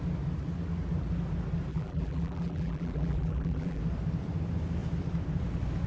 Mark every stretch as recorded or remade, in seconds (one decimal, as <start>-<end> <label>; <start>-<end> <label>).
0.0-1.7 recorded; 1.7-3.8 remade; 3.8-5.9 recorded